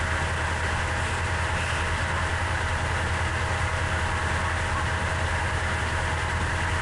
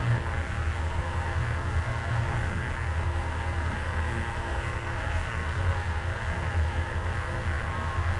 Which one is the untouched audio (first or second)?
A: first